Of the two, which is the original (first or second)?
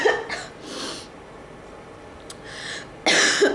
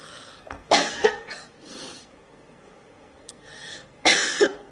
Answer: first